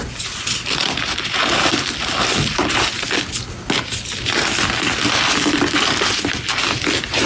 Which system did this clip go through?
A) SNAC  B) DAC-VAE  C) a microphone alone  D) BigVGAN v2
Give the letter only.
C